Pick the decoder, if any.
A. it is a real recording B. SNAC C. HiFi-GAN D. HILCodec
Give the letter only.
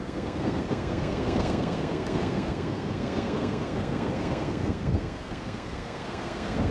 B